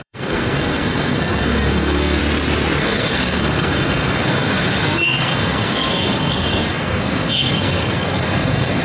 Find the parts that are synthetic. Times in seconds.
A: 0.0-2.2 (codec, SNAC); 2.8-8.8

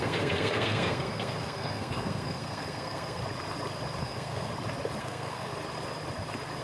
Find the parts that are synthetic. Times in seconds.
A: 0.0-3.2 (codec, SNAC); 4.0-4.5; 5.0-5.5

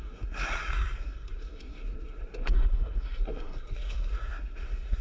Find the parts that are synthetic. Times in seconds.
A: 0.0-5.0 (codec, SNAC)

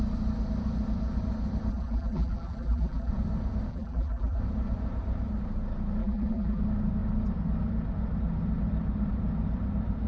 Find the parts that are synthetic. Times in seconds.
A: 1.7-3.1 (vocoder, BigVGAN v2); 3.7-4.4; 6.0-6.6

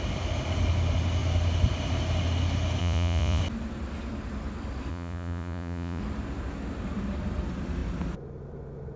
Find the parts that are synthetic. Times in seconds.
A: 2.8-3.4 (vocoder, Vocos); 4.9-6.0

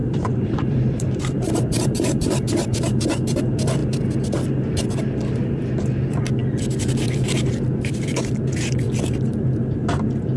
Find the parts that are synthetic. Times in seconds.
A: 0.0-3.4 (vocoder, BigVGAN v2)

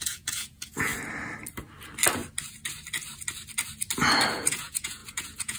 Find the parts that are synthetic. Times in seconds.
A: 0.0-0.9 (vocoder, Vocos); 4.3-5.6